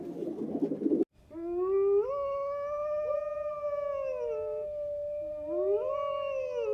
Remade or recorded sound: recorded